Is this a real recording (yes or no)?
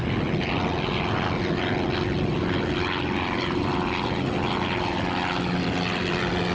yes